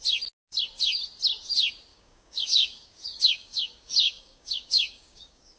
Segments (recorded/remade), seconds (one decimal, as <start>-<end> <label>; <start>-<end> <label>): 0.0-1.9 recorded; 1.9-5.6 remade